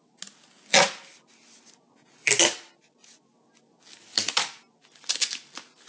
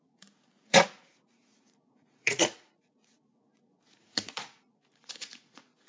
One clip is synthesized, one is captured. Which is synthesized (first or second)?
second